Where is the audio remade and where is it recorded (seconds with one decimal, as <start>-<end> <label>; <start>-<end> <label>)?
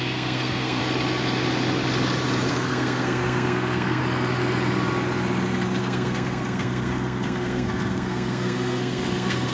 0.0-0.8 remade; 0.8-2.5 recorded; 2.5-4.0 remade; 4.0-5.8 recorded; 5.8-9.5 remade